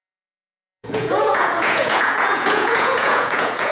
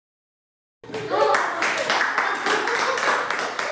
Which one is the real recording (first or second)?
second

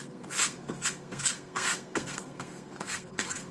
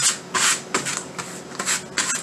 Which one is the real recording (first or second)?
second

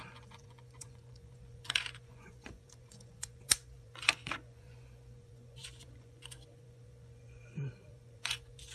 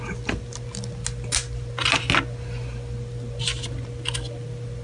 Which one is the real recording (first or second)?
second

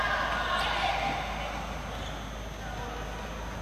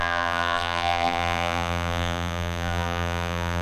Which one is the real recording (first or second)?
first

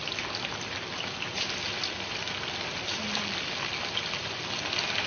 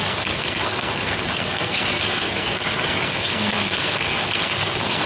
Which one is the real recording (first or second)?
first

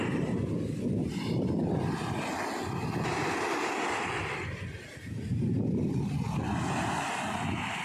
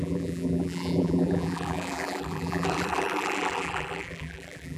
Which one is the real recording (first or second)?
first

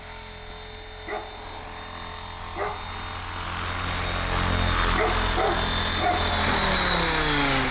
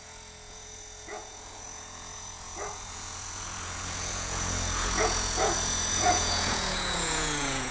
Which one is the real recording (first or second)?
first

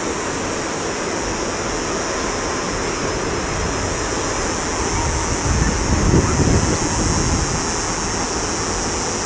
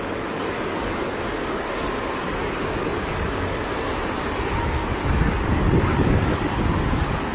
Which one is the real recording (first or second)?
first